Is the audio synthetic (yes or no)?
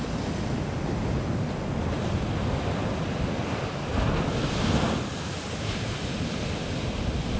no